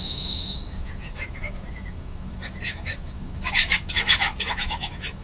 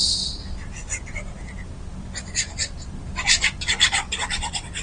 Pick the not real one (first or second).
first